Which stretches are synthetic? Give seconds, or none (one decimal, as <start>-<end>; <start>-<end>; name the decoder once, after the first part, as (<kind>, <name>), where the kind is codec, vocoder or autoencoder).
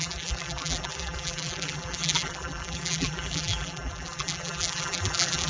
0.0-5.5 (vocoder, BigVGAN v2)